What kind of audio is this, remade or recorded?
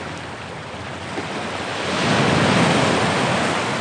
recorded